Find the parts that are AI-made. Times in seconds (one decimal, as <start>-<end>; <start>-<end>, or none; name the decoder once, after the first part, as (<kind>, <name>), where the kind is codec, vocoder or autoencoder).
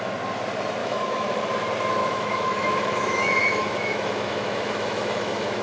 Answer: 0.8-1.4 (autoencoder, DAC-VAE); 2.0-5.6